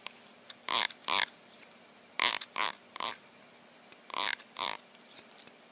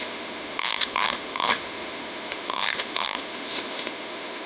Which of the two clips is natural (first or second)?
first